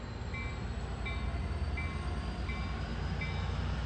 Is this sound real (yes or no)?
yes